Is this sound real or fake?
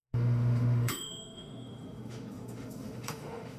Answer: fake